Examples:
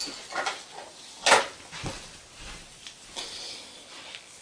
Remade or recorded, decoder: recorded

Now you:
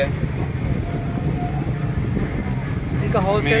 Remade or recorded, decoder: recorded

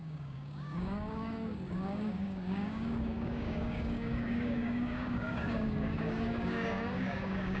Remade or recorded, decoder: remade, codec, DAC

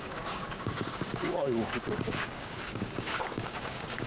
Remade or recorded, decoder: remade, codec, DAC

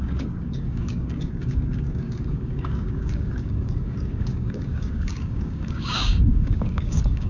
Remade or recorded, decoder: remade, codec, DAC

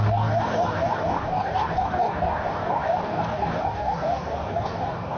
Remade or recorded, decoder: remade, codec, DAC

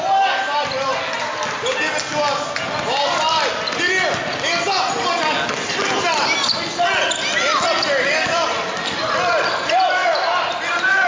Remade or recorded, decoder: recorded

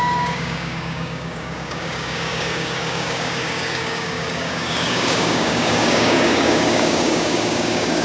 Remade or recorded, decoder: remade, codec, DAC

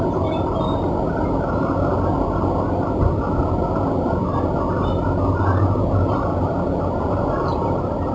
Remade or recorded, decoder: recorded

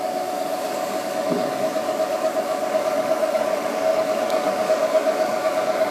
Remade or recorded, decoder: remade, codec, DAC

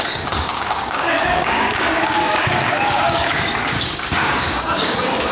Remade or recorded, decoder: remade, codec, DAC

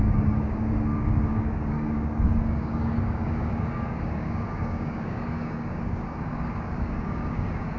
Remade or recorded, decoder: remade, codec, DAC